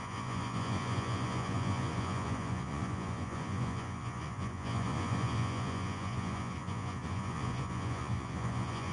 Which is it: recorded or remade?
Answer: remade